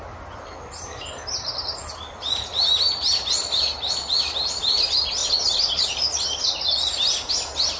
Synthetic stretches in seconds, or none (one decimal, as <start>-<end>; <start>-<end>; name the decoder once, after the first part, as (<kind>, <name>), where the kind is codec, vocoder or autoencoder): none